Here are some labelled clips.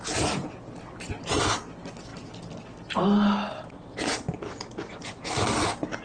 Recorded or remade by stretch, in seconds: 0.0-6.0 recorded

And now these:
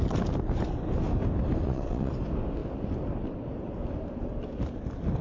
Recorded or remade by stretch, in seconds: 0.0-1.6 recorded; 1.6-2.1 remade; 2.1-5.2 recorded

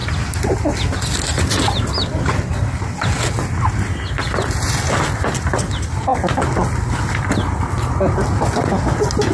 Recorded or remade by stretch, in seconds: 0.0-9.3 recorded

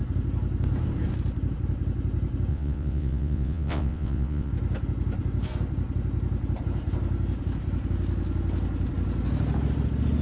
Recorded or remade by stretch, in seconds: 0.0-2.5 recorded; 2.5-4.5 remade; 4.5-10.2 recorded

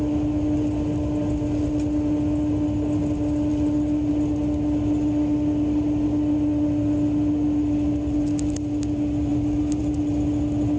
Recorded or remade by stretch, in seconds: 0.0-10.8 recorded

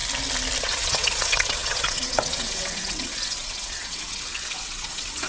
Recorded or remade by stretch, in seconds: 0.0-0.6 recorded; 0.6-5.3 remade

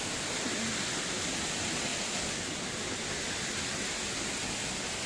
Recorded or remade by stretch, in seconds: 0.0-5.1 recorded

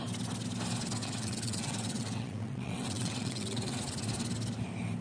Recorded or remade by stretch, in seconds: 0.0-1.0 recorded; 1.0-3.8 remade; 3.8-5.0 recorded